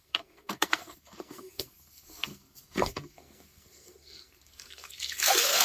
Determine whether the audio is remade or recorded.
remade